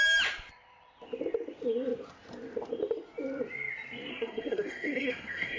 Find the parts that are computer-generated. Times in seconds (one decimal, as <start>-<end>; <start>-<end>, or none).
4.1-5.6